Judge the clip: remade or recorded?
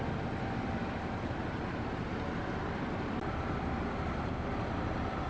remade